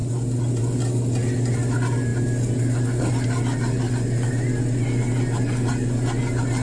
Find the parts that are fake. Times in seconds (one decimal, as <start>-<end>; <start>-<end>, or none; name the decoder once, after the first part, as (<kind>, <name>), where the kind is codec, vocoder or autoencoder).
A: none